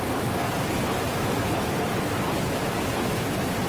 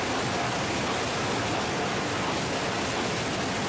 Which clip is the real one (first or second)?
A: second